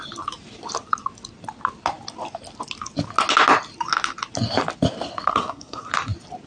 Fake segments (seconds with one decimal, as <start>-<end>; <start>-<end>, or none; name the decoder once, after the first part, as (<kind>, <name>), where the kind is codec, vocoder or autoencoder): 5.3-5.9 (codec, SNAC)